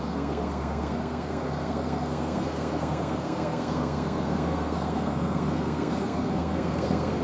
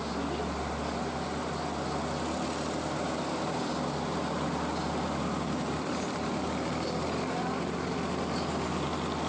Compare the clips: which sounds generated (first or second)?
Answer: first